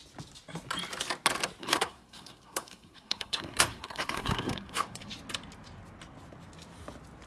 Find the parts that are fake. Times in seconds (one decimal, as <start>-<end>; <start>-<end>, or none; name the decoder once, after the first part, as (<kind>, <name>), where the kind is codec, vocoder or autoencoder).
1.6-5.1 (codec, SNAC)